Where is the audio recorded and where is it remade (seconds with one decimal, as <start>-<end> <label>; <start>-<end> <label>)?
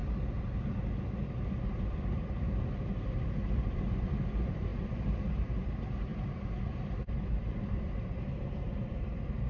0.0-1.3 recorded; 1.3-9.5 remade